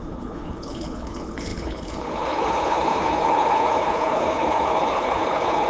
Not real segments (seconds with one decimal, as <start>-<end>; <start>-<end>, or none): 0.0-5.7